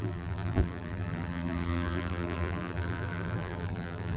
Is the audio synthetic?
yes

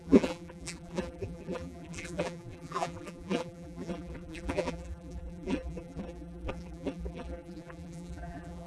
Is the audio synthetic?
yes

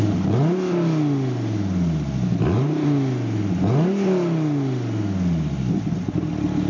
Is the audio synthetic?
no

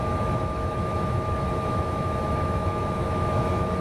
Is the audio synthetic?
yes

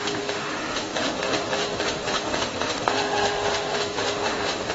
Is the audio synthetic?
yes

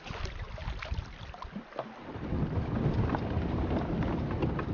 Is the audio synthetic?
no